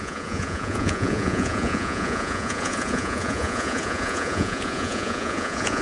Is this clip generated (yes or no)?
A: yes